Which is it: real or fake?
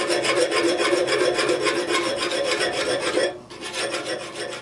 real